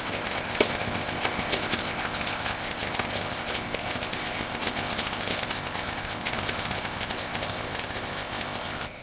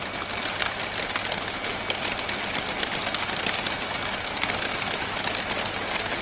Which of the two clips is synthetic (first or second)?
first